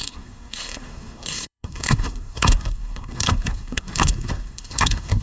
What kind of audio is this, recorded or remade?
remade